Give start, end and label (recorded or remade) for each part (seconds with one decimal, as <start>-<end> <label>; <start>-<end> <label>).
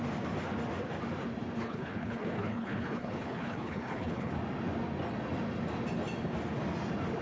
0.0-1.6 recorded; 1.6-4.3 remade; 4.3-7.2 recorded